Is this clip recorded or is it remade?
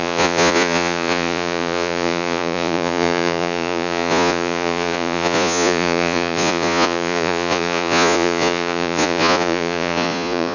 remade